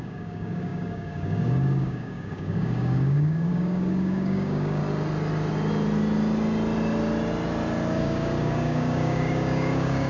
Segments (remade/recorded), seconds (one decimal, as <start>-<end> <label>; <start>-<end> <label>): 0.0-4.8 remade; 4.8-8.0 recorded; 8.0-10.1 remade